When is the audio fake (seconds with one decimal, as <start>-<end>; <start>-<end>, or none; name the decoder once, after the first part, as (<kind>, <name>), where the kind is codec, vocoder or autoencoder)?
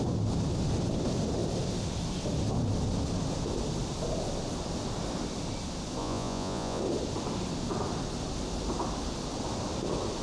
6.0-6.8 (vocoder, Vocos)